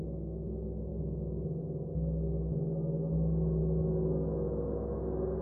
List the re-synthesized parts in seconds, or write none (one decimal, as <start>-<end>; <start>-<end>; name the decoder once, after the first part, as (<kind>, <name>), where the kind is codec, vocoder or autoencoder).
3.6-4.9 (autoencoder, DAC-VAE)